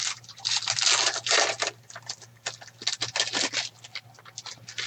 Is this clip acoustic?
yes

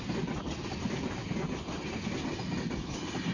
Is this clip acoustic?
yes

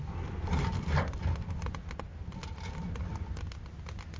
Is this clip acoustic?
yes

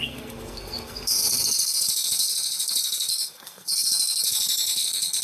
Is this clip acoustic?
no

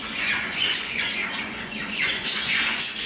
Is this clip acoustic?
no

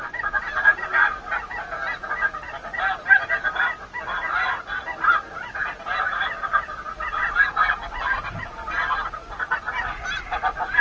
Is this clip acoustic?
yes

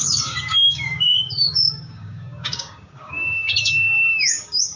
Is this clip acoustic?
no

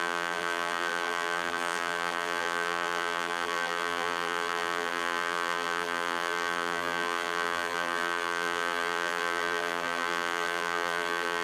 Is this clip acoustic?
no